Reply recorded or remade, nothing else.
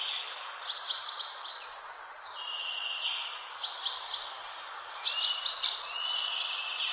recorded